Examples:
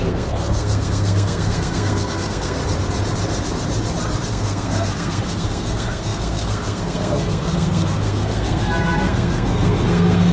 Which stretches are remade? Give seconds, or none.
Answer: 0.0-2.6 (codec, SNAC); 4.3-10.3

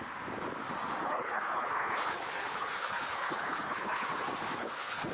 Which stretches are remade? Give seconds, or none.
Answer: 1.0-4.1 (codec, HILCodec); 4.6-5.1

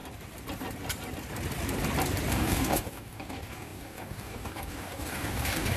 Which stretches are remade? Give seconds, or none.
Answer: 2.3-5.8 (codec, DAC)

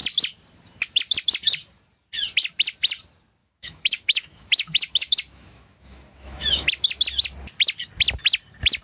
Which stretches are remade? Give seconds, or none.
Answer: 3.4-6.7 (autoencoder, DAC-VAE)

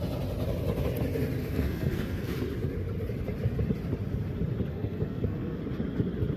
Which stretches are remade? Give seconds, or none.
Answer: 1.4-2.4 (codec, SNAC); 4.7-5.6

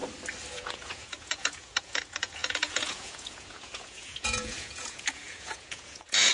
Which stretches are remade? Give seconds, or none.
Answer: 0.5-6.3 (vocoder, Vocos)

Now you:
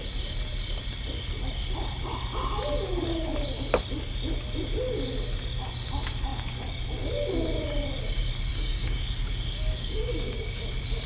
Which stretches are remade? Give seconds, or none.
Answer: 8.5-10.6 (codec, DAC)